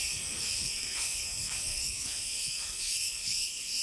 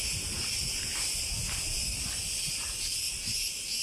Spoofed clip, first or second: first